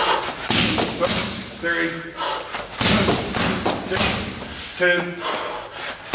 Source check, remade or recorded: recorded